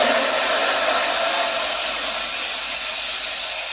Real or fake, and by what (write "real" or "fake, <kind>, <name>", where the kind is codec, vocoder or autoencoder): real